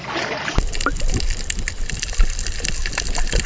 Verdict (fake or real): real